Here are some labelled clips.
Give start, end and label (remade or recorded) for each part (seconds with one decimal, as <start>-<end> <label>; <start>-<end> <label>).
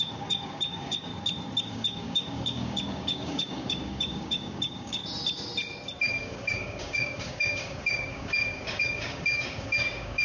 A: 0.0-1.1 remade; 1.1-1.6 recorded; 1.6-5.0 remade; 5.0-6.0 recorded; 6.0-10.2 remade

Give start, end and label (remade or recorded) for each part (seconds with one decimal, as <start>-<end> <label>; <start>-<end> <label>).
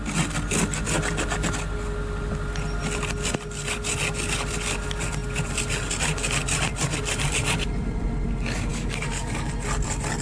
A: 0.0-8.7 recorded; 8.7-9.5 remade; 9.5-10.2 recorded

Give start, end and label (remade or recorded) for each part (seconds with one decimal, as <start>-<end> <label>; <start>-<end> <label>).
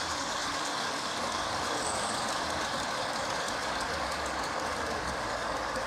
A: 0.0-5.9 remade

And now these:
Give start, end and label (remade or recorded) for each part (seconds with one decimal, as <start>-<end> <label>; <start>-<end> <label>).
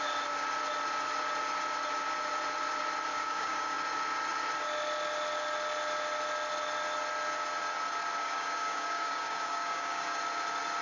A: 0.0-3.1 recorded; 3.1-3.8 remade; 3.8-8.2 recorded; 8.2-10.2 remade; 10.2-10.8 recorded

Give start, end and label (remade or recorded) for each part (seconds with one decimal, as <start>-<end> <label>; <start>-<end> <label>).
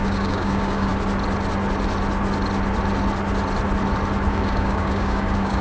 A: 0.0-0.9 remade; 0.9-4.3 recorded; 4.3-5.6 remade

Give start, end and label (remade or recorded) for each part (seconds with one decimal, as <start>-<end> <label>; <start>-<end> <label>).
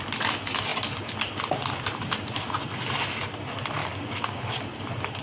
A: 0.0-3.8 recorded; 3.8-4.4 remade; 4.4-5.2 recorded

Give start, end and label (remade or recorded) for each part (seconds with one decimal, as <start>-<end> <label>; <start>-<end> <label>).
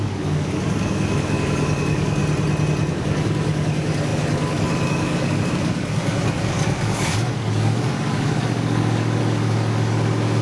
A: 0.0-2.2 remade; 2.2-2.9 recorded; 2.9-10.4 remade